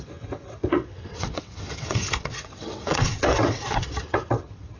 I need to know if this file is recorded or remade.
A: remade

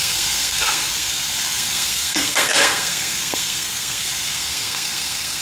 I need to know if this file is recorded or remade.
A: remade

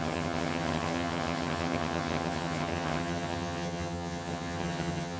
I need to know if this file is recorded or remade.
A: remade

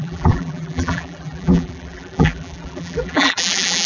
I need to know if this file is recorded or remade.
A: remade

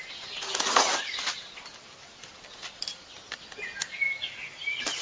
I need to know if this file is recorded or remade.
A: recorded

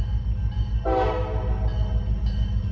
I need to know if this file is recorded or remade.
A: recorded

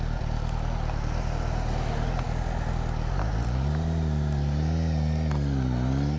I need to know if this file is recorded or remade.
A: recorded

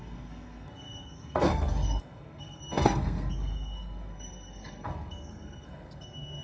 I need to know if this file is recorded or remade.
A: remade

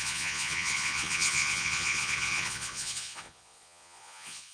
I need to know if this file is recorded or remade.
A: remade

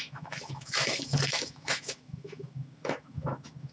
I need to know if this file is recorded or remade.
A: remade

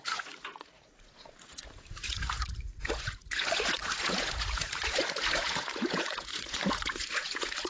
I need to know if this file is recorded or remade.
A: remade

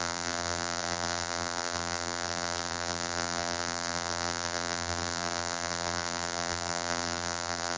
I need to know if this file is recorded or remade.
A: remade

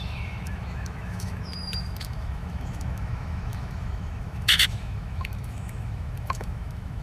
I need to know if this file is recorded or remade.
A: remade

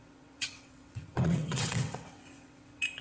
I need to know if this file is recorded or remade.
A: remade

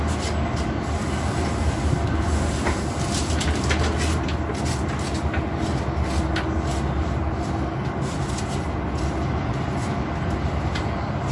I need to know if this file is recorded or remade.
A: recorded